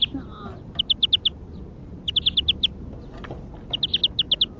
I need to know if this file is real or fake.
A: real